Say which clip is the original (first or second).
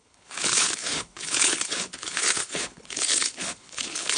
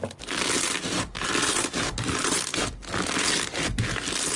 second